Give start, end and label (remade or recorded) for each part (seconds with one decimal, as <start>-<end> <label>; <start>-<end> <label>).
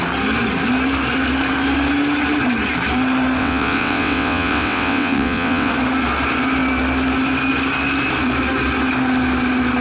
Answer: 0.0-3.4 recorded; 3.4-5.7 remade; 5.7-9.8 recorded